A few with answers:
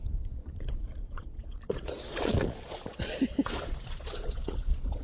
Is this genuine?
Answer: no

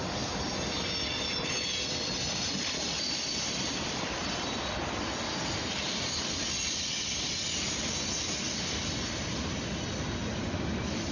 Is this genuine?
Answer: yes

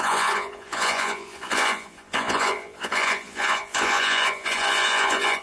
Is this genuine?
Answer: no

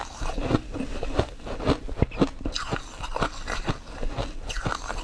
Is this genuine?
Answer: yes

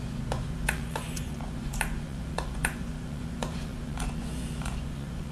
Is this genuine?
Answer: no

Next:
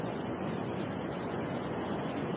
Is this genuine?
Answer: no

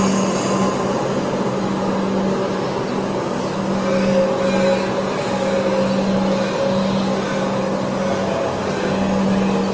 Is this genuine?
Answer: yes